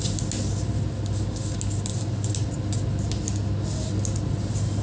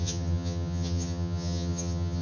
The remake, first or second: second